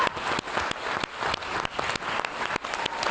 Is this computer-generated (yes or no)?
no